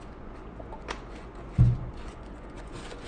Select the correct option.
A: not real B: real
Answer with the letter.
A